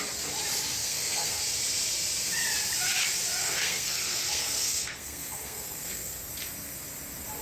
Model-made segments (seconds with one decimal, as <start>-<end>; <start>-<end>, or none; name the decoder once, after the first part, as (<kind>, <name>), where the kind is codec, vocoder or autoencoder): 0.8-1.4 (codec, SNAC); 3.4-6.3